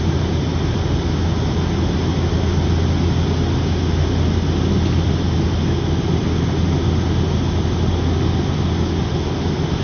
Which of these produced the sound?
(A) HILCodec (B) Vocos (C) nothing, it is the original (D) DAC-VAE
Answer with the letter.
C